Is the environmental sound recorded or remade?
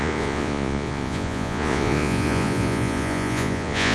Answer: remade